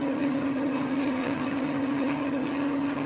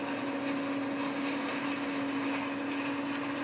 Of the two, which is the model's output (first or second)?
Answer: first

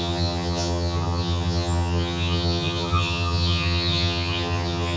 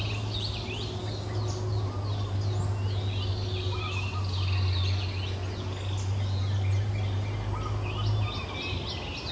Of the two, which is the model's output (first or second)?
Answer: first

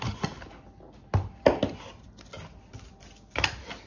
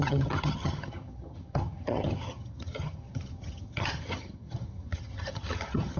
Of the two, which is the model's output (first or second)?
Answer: second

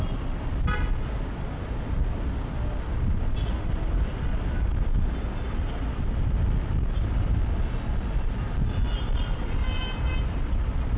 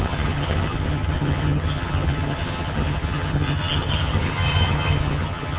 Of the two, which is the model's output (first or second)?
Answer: second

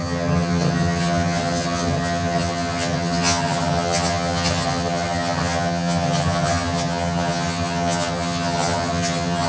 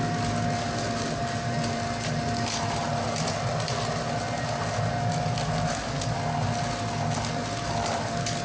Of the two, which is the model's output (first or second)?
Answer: first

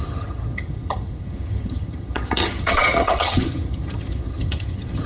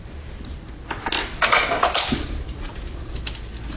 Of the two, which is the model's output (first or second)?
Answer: first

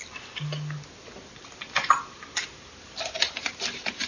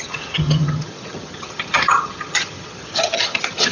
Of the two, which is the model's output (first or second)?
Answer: second